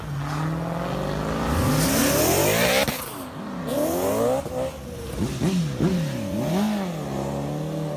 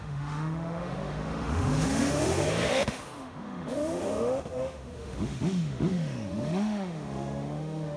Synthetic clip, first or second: second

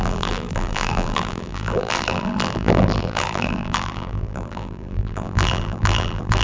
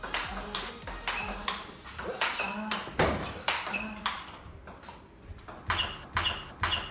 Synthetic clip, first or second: first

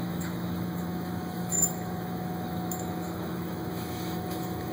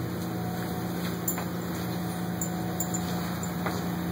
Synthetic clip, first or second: first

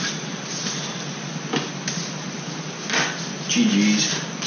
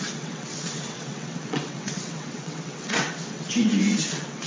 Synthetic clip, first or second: second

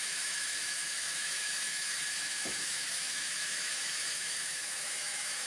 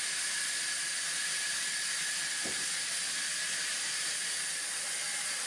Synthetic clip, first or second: first